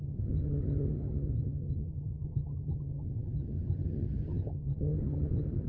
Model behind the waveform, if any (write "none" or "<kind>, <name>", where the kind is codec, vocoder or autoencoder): vocoder, HiFi-GAN